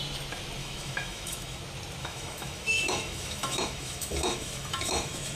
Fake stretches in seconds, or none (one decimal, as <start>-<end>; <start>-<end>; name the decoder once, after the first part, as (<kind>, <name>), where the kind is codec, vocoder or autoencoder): 0.6-1.6 (autoencoder, DAC-VAE); 2.0-5.4